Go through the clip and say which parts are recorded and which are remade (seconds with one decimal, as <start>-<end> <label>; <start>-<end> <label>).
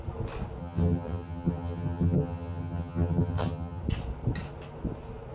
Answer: 0.0-0.6 recorded; 0.6-3.8 remade; 3.8-5.3 recorded